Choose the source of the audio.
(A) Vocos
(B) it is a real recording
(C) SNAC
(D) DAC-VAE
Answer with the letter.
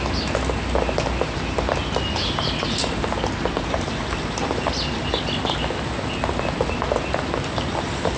B